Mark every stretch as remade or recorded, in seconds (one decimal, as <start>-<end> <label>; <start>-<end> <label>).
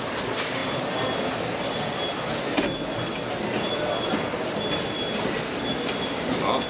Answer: 0.0-6.7 recorded